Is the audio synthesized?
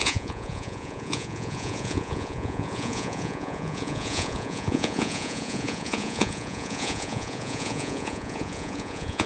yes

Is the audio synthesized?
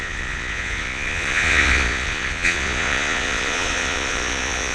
yes